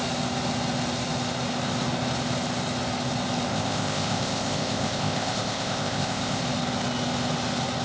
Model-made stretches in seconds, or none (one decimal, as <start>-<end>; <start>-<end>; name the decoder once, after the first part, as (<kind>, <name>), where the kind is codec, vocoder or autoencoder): 3.5-6.4 (codec, ZipCodec)

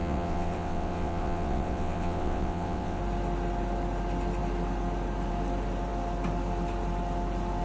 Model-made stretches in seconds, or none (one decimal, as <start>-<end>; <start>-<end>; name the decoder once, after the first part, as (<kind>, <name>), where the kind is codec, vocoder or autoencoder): 0.0-3.0 (vocoder, WaveNeXt)

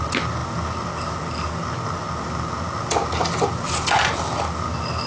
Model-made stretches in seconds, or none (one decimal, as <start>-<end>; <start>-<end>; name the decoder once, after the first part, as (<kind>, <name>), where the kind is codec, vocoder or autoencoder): none

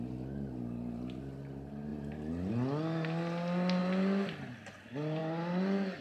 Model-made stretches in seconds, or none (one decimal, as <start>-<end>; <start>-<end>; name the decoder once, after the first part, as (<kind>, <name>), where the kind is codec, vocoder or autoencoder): none

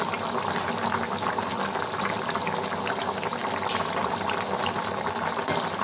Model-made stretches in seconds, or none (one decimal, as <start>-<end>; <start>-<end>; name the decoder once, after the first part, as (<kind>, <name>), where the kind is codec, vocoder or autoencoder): 3.4-4.1 (vocoder, BigVGAN v2); 4.6-5.3

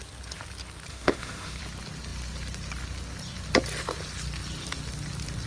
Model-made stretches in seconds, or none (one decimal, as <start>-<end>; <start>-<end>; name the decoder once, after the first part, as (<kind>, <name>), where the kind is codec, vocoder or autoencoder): 0.9-1.6 (autoencoder, DAC-VAE)